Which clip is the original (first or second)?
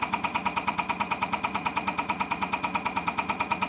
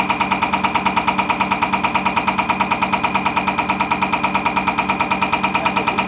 second